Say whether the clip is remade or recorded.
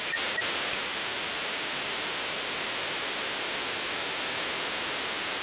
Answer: recorded